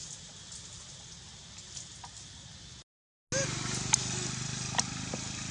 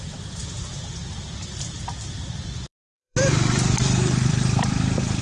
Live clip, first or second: first